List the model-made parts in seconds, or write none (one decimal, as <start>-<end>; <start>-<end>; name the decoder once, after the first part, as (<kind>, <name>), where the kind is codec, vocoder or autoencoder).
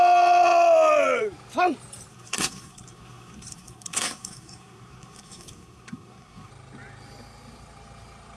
2.1-6.5 (codec, SNAC)